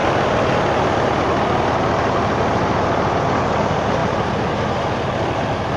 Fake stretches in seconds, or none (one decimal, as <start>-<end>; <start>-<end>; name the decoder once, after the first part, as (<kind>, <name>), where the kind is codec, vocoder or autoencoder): 4.0-4.5 (vocoder, BigVGAN v2)